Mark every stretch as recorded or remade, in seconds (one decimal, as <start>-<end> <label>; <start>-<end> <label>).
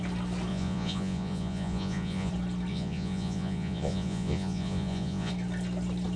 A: 0.0-0.5 recorded; 0.5-2.3 remade; 2.3-2.7 recorded; 2.7-5.3 remade; 5.3-6.2 recorded